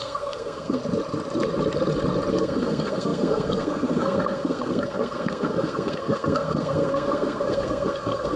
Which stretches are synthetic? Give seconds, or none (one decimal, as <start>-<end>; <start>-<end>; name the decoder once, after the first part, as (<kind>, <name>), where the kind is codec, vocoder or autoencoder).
0.0-0.8 (codec, SNAC); 2.3-8.4